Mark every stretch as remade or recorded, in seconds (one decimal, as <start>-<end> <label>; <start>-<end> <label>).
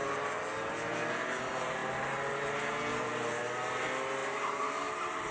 0.0-4.2 recorded; 4.2-5.3 remade